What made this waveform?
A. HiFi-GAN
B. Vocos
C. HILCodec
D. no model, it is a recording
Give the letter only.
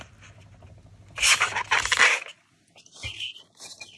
D